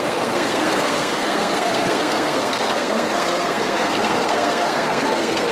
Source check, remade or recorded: remade